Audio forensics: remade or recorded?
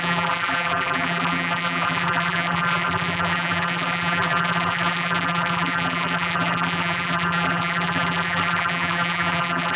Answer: remade